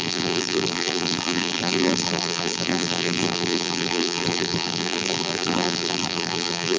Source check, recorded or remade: remade